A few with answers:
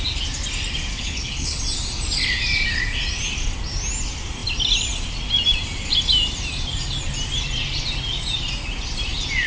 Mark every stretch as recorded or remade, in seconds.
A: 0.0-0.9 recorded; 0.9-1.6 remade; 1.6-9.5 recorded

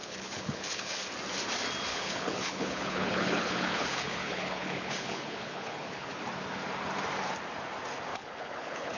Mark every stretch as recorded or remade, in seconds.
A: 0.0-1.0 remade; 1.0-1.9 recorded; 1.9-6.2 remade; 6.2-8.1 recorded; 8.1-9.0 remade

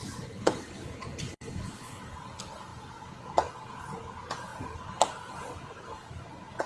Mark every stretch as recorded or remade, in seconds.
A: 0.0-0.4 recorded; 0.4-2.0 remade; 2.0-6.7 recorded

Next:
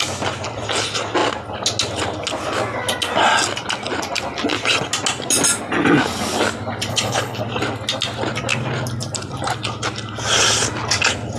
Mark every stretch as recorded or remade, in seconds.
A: 0.0-6.9 recorded; 6.9-7.4 remade; 7.4-11.4 recorded

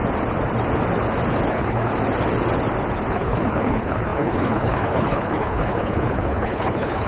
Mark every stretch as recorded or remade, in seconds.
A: 0.0-1.5 recorded; 1.5-1.9 remade; 1.9-3.1 recorded; 3.1-7.1 remade

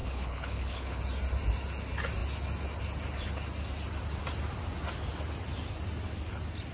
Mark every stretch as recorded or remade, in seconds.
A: 0.0-1.0 remade; 1.0-6.7 recorded

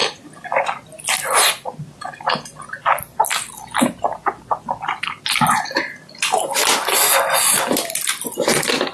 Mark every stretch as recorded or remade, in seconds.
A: 0.0-8.9 recorded

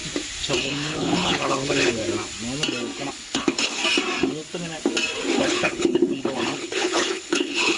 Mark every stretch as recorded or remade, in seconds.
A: 0.0-0.6 recorded; 0.6-2.0 remade; 2.0-3.1 recorded; 3.1-3.8 remade; 3.8-5.4 recorded; 5.4-7.8 remade